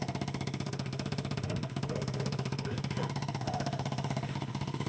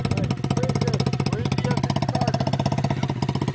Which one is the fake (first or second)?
first